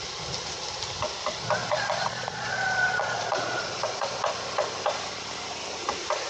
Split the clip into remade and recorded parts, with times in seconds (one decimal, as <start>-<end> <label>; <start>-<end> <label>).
0.0-1.6 recorded; 1.6-4.3 remade; 4.3-6.3 recorded